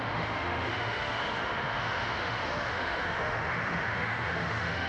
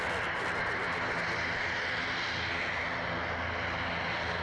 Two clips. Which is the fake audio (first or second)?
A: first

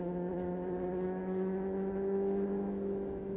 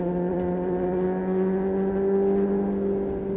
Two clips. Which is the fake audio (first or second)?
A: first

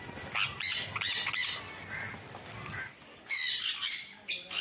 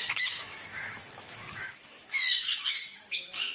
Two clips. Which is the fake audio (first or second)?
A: second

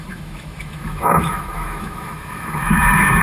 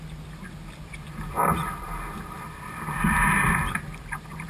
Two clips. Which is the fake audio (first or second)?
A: first